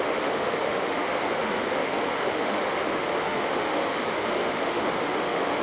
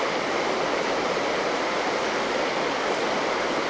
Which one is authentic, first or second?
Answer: second